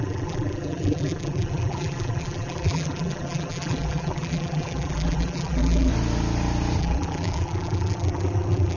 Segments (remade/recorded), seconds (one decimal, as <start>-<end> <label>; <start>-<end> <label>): 0.0-5.9 remade; 5.9-6.8 recorded; 6.8-8.8 remade